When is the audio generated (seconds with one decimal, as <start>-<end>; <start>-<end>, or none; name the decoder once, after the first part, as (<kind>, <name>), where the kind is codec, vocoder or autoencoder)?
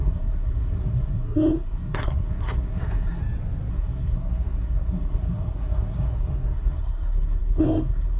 0.0-3.2 (codec, SNAC); 3.7-8.2